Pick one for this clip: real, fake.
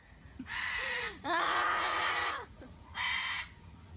fake